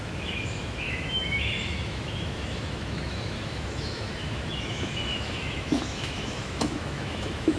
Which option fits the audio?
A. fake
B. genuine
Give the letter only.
A